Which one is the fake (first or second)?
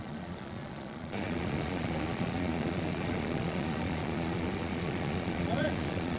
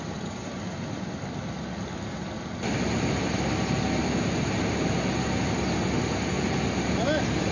first